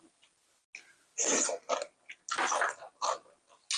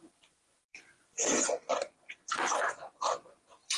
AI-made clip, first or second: second